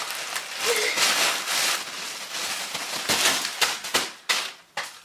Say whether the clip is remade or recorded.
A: recorded